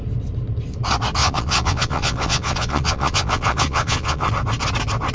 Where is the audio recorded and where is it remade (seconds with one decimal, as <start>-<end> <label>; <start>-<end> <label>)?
0.0-1.2 recorded; 1.2-4.3 remade; 4.3-5.1 recorded